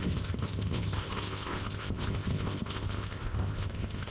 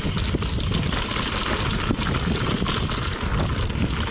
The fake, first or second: first